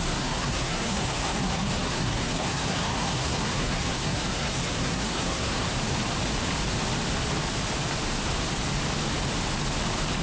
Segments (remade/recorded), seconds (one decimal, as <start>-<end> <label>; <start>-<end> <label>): 0.0-5.7 remade; 5.7-10.2 recorded